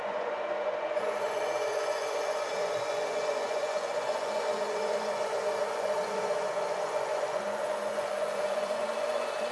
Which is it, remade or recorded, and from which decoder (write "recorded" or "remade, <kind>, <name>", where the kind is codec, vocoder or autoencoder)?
remade, vocoder, Vocos